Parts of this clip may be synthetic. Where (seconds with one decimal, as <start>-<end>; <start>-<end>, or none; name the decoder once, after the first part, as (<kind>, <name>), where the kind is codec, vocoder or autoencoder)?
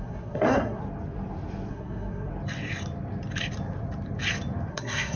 0.0-0.8 (codec, SNAC); 1.7-2.3; 4.7-5.2